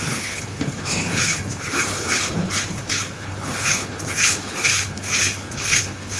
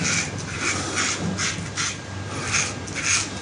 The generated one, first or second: first